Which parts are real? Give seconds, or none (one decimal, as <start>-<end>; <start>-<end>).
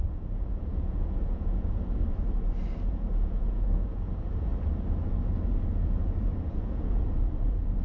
2.0-2.9; 4.5-5.6